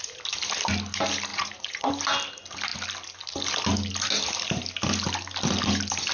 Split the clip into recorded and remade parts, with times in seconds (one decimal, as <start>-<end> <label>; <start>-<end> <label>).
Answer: 0.0-1.3 recorded; 1.3-1.9 remade; 1.9-6.1 recorded

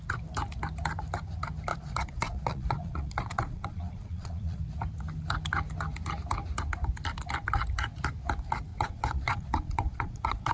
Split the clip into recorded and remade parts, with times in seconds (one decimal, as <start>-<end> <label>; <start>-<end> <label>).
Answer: 0.0-1.7 recorded; 1.7-4.6 remade; 4.6-8.7 recorded; 8.7-10.5 remade

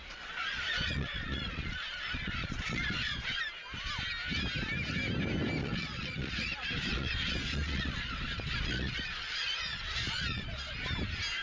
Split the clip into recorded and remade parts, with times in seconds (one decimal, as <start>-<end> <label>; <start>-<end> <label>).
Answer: 0.0-3.4 remade; 3.4-5.6 recorded; 5.6-10.8 remade; 10.8-11.4 recorded